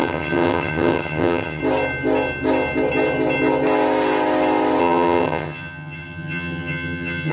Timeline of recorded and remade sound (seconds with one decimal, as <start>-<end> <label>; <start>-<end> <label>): 0.0-1.6 remade; 1.6-4.8 recorded; 4.8-7.3 remade